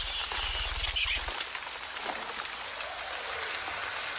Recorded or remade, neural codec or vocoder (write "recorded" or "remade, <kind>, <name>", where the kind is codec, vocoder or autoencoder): recorded